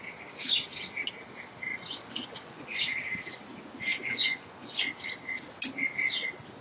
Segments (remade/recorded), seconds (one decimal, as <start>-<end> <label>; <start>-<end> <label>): 0.0-1.7 recorded; 1.7-2.8 remade; 2.8-3.9 recorded; 3.9-4.9 remade; 4.9-6.6 recorded